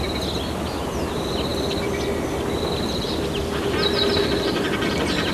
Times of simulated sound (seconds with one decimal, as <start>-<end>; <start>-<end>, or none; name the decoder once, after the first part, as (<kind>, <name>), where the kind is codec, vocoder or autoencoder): none